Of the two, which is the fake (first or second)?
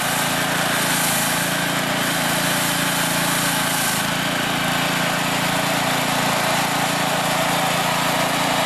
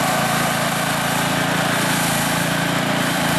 second